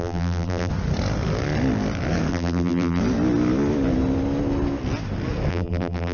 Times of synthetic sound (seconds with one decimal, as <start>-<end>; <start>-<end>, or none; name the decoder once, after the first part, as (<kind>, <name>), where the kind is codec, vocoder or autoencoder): 0.0-0.7 (vocoder, BigVGAN v2); 2.3-3.0; 5.5-6.1